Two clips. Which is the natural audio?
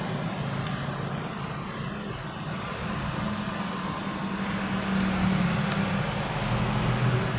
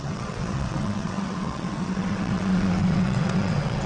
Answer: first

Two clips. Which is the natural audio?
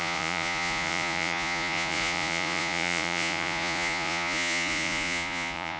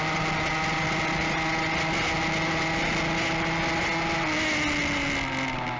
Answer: second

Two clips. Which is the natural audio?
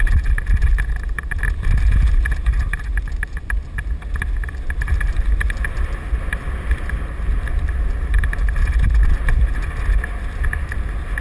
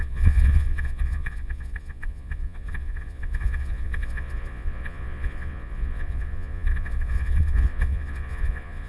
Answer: first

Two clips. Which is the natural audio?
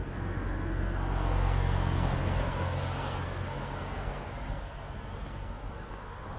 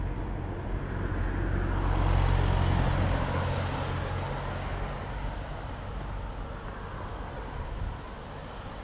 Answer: second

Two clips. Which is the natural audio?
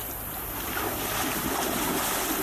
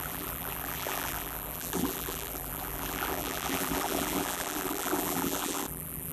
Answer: first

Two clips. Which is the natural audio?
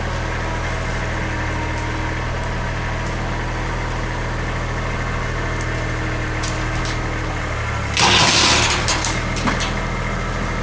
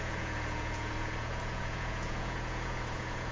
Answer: first